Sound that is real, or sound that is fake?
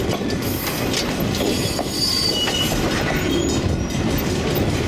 real